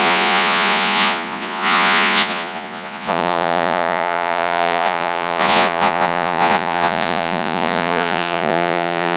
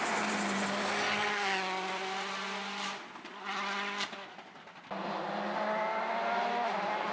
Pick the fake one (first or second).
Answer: first